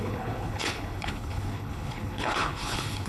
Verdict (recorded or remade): remade